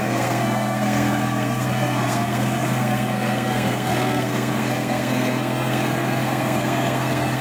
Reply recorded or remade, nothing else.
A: remade